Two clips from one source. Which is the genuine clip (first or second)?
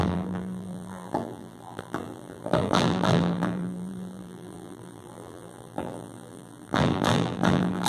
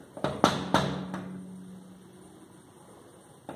second